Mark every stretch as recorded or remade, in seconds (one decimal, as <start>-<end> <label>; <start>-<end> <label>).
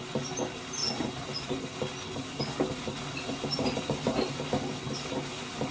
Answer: 0.0-0.8 recorded; 0.8-1.5 remade; 1.5-5.7 recorded